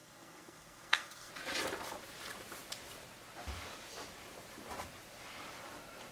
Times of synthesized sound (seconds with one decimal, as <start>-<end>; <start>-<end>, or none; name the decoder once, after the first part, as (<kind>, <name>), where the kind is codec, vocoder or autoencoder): 0.0-1.3 (codec, SNAC)